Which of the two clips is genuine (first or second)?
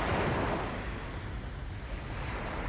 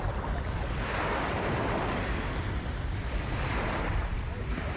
first